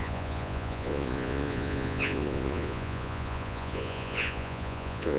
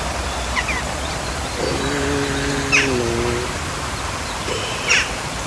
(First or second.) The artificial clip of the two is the first